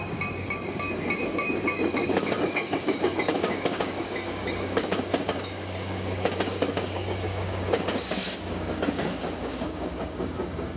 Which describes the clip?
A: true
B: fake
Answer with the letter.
B